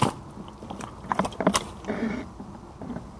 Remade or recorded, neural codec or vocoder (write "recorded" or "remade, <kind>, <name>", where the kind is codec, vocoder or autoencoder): recorded